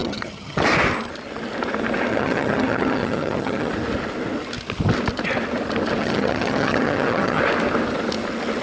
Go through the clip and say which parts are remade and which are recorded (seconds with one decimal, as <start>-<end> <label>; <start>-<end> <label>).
0.0-0.6 remade; 0.6-2.1 recorded; 2.1-3.7 remade; 3.7-6.0 recorded; 6.0-7.4 remade; 7.4-8.6 recorded